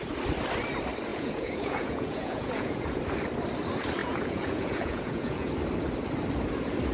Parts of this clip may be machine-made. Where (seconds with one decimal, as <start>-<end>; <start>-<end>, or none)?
1.1-3.0; 4.0-5.5